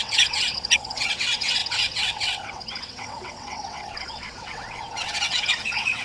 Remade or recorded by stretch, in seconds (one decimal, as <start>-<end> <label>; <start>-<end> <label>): 0.0-6.0 remade